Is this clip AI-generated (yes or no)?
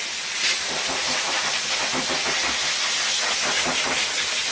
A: no